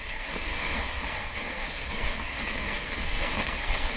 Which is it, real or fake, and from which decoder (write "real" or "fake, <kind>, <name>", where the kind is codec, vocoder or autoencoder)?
fake, codec, SNAC